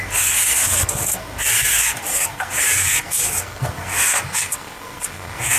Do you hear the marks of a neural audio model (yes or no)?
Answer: yes